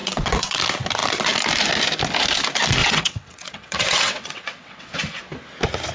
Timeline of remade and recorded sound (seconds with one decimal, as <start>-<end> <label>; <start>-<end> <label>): 0.0-0.6 remade; 0.6-2.8 recorded; 2.8-4.9 remade; 4.9-5.9 recorded

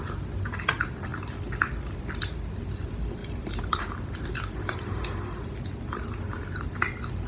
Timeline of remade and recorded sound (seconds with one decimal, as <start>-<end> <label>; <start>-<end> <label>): 0.0-3.2 recorded; 3.2-4.9 remade; 4.9-7.3 recorded

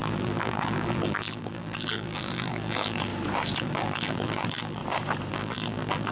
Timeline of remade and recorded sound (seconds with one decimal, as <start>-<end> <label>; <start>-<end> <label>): 0.0-3.1 remade; 3.1-3.6 recorded; 3.6-4.8 remade; 4.8-5.3 recorded; 5.3-6.1 remade

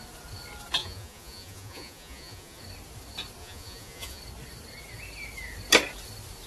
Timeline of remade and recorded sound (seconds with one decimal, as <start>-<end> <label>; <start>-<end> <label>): 0.0-0.8 recorded; 0.8-2.6 remade; 2.6-3.4 recorded; 3.4-4.2 remade; 4.2-6.5 recorded

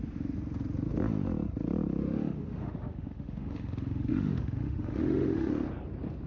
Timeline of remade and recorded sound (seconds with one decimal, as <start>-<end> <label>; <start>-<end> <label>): 0.0-2.0 recorded; 2.0-5.5 remade; 5.5-6.3 recorded

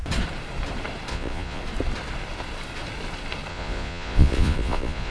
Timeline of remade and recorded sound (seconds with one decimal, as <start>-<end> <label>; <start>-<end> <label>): 0.0-1.1 recorded; 1.1-1.6 remade; 1.6-3.5 recorded; 3.5-5.1 remade